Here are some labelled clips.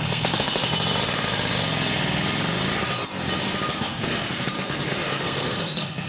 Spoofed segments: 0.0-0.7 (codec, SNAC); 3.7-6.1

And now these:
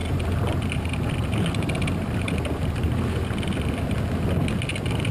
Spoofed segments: none

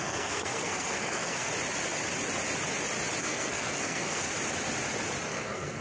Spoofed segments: 0.0-1.5 (codec, SNAC); 3.2-4.3; 5.3-5.8

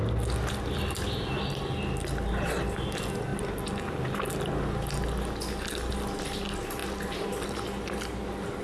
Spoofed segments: none